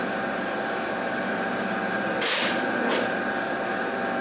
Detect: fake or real fake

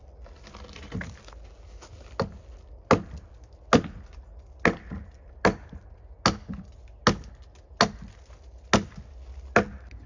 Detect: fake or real real